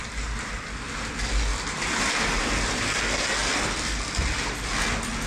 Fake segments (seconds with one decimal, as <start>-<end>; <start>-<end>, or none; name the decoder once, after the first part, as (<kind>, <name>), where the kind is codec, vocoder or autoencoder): 1.5-2.4 (vocoder, BigVGAN v2); 3.4-4.4